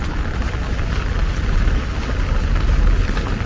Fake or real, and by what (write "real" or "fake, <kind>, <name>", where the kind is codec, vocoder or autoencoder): real